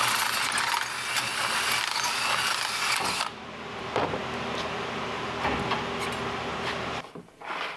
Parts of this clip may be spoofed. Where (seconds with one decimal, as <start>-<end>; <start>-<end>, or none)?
none